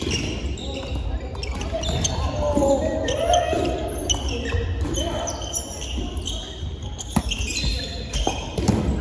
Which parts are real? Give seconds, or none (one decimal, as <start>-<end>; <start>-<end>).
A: 0.0-9.0